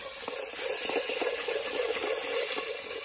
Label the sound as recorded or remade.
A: recorded